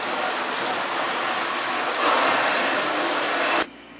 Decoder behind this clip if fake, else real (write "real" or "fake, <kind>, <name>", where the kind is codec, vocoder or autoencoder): real